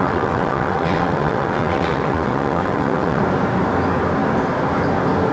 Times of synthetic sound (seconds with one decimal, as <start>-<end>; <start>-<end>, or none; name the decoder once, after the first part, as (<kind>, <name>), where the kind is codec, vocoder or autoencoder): 0.0-3.2 (vocoder, WaveNeXt)